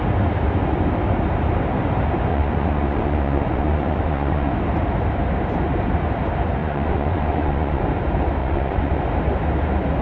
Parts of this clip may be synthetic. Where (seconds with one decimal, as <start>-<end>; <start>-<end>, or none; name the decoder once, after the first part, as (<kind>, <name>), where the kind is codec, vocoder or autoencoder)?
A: 2.3-4.5 (vocoder, Vocos); 6.6-7.8; 8.4-9.0